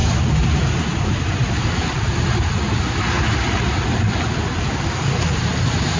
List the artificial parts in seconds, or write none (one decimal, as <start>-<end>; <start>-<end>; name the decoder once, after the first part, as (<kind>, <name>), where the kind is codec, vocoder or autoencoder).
none